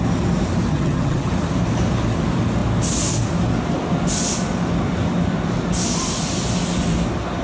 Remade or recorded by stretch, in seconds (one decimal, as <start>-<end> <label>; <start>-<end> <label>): 0.0-0.7 recorded; 0.7-1.3 remade; 1.3-7.4 recorded